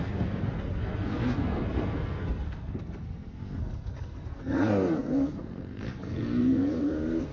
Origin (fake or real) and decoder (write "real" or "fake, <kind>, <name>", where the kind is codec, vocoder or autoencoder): fake, codec, SNAC